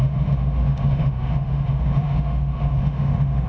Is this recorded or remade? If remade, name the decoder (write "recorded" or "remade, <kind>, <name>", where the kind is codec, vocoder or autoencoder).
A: remade, autoencoder, DAC-VAE